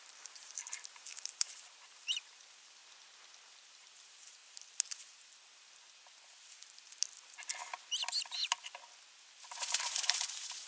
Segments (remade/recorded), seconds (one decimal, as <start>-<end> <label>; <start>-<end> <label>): 0.0-2.8 remade; 2.8-3.5 recorded; 3.5-4.4 remade; 4.4-9.6 recorded; 9.6-10.7 remade